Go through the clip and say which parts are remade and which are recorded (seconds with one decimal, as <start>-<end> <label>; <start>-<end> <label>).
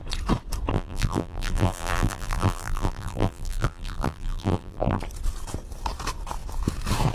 0.0-0.7 recorded; 0.7-5.0 remade; 5.0-7.1 recorded